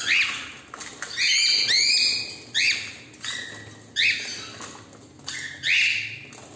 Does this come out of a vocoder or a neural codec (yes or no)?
no